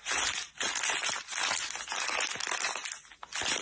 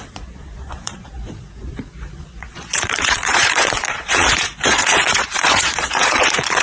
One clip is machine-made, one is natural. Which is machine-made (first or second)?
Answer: second